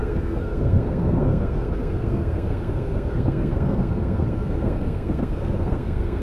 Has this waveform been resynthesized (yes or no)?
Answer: yes